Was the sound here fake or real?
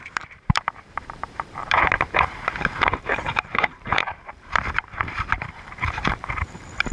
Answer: fake